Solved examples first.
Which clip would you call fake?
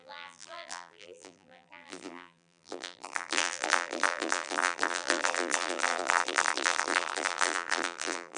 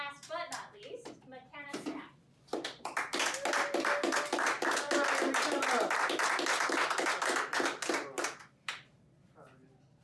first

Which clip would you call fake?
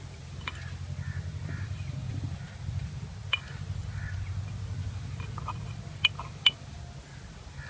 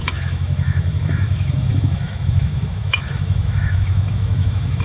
second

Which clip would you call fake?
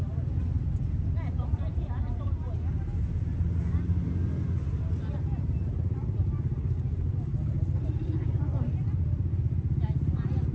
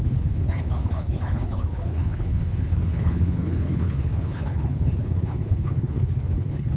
second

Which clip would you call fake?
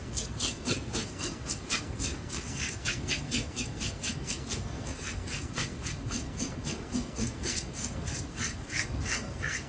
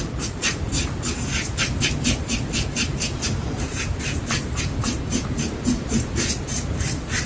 first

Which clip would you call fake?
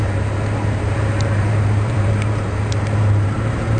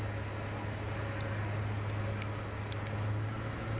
first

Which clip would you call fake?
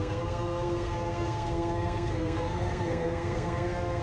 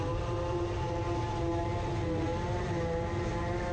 first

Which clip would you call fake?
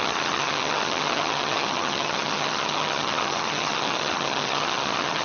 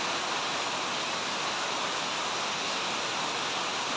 first